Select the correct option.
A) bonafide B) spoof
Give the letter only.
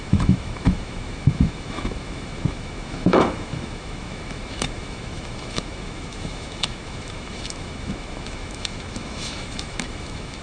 B